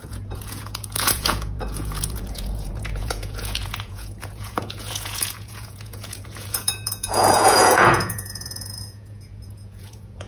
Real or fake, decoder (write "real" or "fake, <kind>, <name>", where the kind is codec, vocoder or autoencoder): fake, vocoder, Vocos